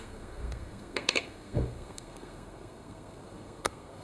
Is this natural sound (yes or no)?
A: no